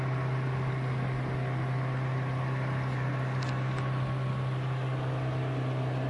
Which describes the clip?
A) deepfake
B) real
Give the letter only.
B